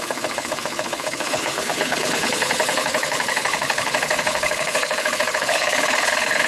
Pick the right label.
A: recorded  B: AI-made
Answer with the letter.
B